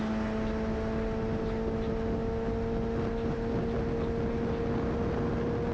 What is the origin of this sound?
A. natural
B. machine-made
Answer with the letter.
A